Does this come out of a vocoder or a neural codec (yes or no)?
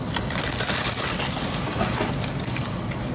no